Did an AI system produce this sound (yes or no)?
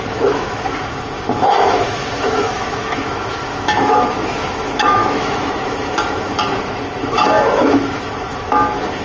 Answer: yes